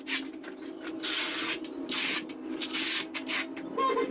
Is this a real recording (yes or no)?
yes